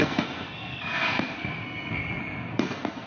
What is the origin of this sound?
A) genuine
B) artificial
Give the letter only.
B